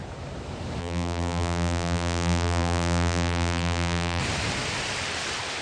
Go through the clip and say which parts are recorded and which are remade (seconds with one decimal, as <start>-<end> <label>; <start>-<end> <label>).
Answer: 0.0-0.8 recorded; 0.8-4.2 remade; 4.2-5.6 recorded